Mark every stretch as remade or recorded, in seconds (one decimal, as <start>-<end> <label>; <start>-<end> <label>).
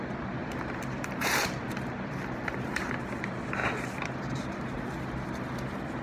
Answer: 0.0-0.4 recorded; 0.4-3.0 remade; 3.0-6.0 recorded